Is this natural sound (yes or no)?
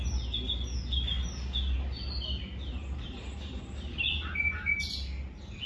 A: yes